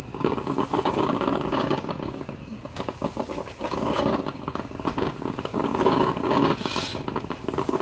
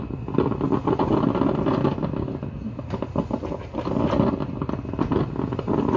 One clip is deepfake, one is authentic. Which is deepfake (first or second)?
first